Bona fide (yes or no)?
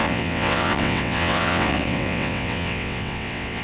no